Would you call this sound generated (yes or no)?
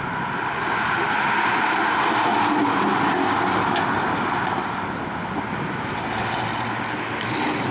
no